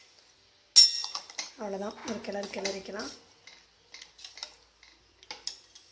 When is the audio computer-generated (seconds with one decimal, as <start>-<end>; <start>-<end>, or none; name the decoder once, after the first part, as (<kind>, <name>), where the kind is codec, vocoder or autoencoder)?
none

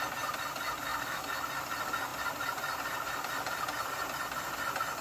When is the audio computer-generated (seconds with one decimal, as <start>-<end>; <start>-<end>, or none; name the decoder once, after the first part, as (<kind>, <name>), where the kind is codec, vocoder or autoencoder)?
0.9-1.5 (autoencoder, DAC-VAE)

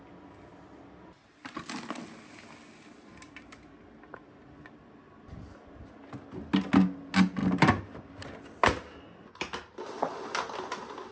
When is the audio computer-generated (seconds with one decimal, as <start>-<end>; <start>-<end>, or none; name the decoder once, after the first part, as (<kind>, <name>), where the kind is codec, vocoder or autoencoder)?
none

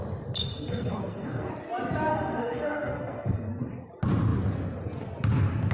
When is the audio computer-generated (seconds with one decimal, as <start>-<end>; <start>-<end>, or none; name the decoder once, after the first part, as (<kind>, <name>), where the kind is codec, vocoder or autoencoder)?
0.7-1.5 (codec, SNAC); 2.1-3.6